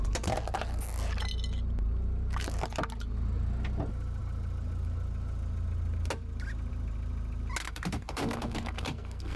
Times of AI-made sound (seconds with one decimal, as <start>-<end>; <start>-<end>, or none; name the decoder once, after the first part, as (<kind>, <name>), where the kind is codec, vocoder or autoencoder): 7.6-9.4 (codec, SNAC)